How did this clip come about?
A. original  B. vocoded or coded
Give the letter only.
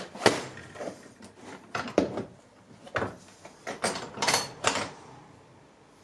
B